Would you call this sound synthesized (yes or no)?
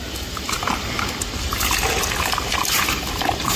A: no